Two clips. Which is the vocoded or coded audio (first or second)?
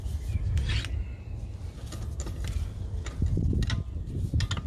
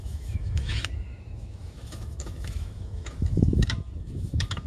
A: second